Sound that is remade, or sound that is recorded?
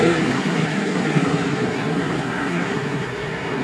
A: remade